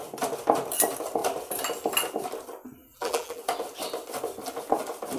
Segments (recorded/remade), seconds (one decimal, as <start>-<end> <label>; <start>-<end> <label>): 0.0-2.8 recorded; 2.8-3.4 remade; 3.4-5.2 recorded